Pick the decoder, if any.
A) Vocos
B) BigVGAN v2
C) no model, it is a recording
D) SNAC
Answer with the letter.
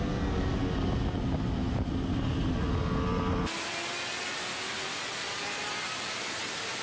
C